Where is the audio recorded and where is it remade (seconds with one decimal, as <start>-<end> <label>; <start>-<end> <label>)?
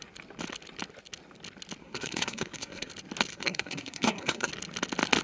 0.0-1.8 recorded; 1.8-2.9 remade; 2.9-3.3 recorded; 3.3-4.5 remade; 4.5-5.2 recorded